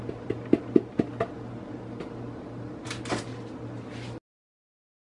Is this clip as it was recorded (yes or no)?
yes